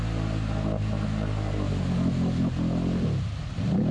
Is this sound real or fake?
real